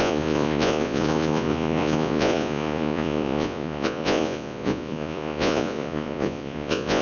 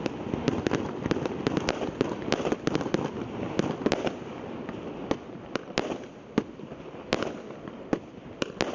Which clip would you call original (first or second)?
second